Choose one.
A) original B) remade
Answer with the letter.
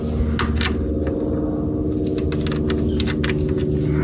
A